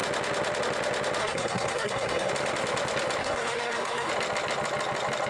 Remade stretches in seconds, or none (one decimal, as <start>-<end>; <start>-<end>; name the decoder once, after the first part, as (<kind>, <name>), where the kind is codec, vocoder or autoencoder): 1.2-2.3 (codec, SNAC); 3.2-4.1